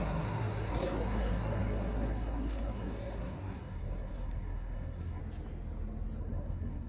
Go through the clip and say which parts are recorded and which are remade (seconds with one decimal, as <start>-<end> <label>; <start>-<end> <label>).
0.0-5.2 remade; 5.2-6.2 recorded; 6.2-6.9 remade